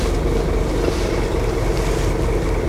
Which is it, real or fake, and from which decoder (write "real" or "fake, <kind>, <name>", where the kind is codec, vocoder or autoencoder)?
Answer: real